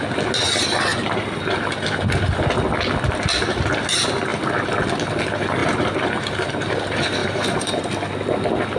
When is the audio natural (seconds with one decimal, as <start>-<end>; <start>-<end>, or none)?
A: 0.0-0.9; 2.4-5.6; 6.7-7.2; 7.8-8.8